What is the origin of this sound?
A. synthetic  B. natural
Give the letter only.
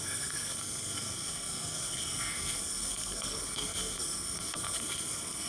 A